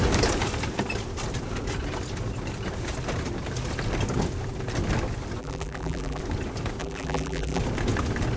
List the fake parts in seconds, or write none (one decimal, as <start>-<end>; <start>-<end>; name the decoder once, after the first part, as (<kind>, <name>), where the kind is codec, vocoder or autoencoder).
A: 5.4-6.2 (vocoder, BigVGAN v2); 6.8-7.6